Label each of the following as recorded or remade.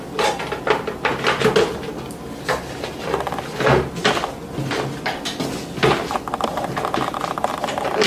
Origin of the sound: recorded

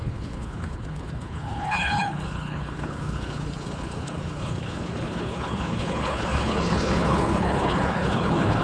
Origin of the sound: remade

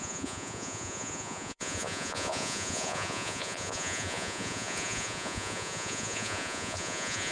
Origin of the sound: remade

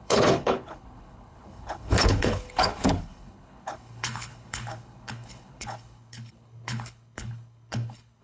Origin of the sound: remade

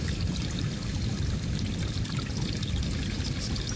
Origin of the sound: recorded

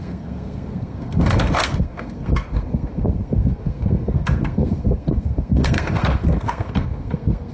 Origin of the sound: remade